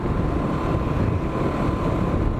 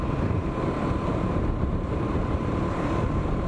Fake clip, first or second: second